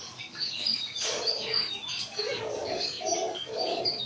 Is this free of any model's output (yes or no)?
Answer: no